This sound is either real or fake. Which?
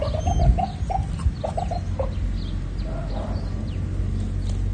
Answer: real